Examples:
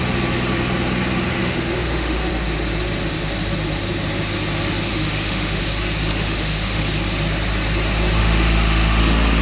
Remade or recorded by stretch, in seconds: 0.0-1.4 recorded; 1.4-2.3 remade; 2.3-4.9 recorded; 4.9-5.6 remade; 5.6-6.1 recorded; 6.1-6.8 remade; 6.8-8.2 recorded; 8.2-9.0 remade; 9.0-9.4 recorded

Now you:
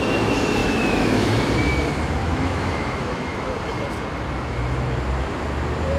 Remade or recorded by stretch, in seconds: 0.0-0.6 recorded; 0.6-1.3 remade; 1.3-2.2 recorded; 2.2-3.5 remade; 3.5-6.0 recorded

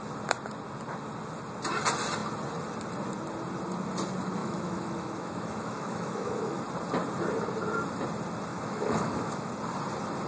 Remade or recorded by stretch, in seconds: 0.0-4.4 recorded; 4.4-6.6 remade; 6.6-8.5 recorded; 8.5-9.5 remade; 9.5-10.3 recorded

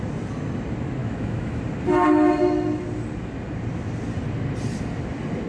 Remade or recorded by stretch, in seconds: 0.0-1.0 recorded; 1.0-1.6 remade; 1.6-5.5 recorded

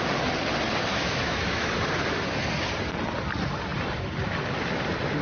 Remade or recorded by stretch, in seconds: 0.0-0.9 recorded; 0.9-1.7 remade; 1.7-5.2 recorded

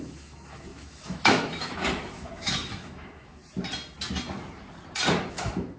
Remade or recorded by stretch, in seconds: 0.0-3.4 remade; 3.4-5.3 recorded; 5.3-5.8 remade

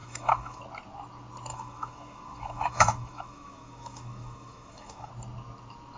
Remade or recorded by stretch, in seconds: 0.0-0.6 remade; 0.6-1.5 recorded; 1.5-5.1 remade; 5.1-6.0 recorded

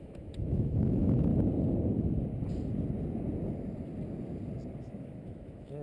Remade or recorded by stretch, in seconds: 0.0-1.3 remade; 1.3-4.8 recorded; 4.8-5.8 remade